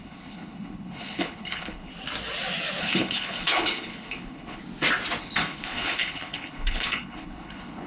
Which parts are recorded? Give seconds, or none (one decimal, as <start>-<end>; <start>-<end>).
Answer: 1.9-2.8; 4.6-5.2